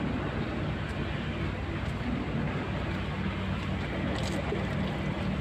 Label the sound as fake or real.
real